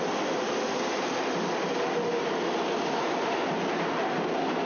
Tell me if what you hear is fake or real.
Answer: real